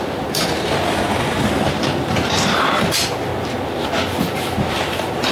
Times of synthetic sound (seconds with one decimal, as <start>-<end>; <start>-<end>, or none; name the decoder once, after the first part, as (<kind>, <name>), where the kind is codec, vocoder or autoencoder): 0.0-3.3 (vocoder, BigVGAN v2); 4.2-5.3